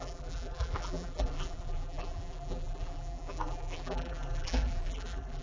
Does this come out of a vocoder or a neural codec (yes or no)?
yes